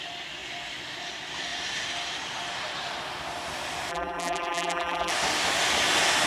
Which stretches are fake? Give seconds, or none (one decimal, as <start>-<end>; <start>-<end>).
3.9-5.1